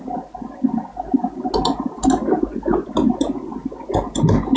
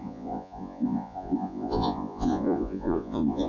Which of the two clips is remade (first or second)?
second